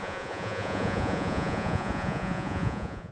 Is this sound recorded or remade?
remade